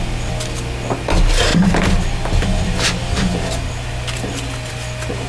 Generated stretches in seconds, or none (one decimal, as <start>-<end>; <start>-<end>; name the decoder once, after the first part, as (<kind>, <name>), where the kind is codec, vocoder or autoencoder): none